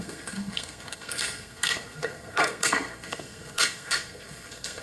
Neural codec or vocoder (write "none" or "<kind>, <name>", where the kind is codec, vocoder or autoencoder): codec, SNAC